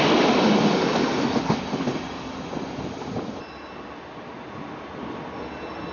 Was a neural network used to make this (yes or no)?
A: no